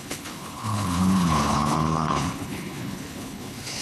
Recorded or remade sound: remade